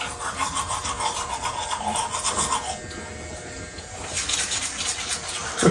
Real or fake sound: real